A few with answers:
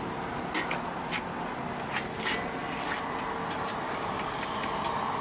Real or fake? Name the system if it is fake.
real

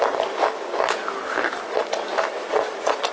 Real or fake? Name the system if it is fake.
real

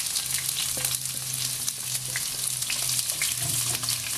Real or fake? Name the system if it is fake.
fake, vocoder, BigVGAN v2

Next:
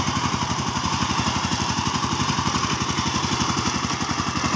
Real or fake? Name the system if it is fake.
fake, vocoder, BigVGAN v2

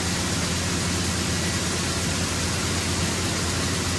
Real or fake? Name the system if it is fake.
real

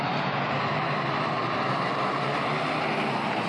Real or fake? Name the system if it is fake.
real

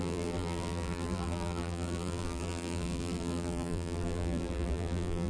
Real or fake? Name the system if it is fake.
fake, vocoder, BigVGAN v2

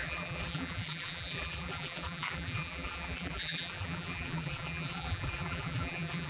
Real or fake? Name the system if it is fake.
fake, vocoder, BigVGAN v2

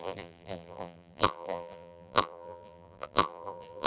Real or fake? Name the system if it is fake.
fake, vocoder, BigVGAN v2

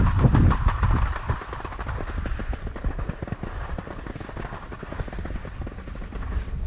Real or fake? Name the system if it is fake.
fake, vocoder, BigVGAN v2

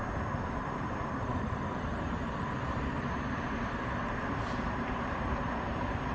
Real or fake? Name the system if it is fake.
fake, vocoder, BigVGAN v2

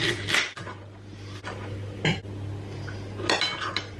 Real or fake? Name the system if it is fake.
real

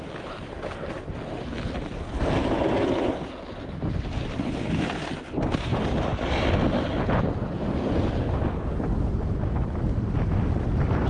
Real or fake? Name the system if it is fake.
real